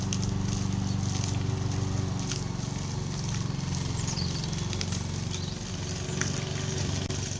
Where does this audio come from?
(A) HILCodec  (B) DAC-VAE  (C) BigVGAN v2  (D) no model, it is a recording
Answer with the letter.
D